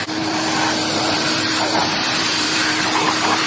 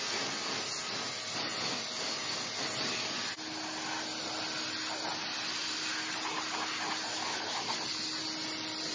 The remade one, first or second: first